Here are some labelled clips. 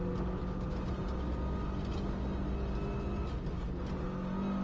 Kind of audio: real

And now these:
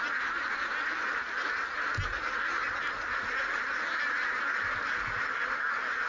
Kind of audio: real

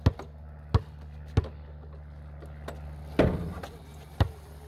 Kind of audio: real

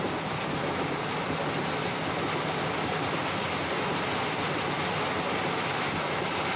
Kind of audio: real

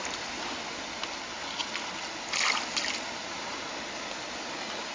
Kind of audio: real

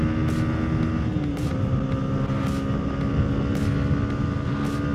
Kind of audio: real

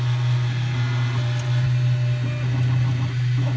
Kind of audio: real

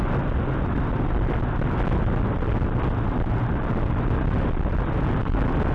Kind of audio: real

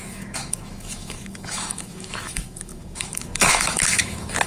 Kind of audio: fake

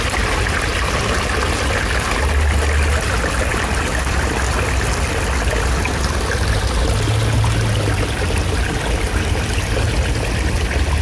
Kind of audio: real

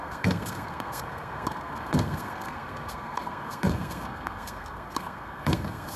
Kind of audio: fake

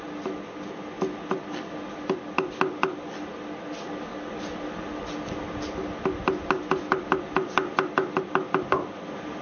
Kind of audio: real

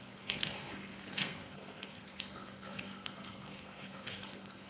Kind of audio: fake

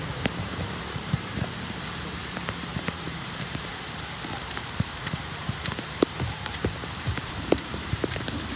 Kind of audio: fake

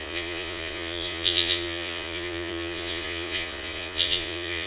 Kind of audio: fake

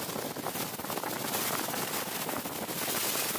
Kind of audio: real